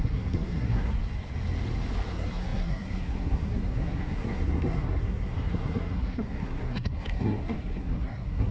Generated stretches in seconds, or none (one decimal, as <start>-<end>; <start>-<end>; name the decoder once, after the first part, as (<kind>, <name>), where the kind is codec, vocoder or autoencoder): 0.0-1.0 (codec, SNAC); 2.1-8.5